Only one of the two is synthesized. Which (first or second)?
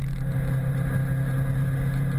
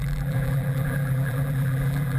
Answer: second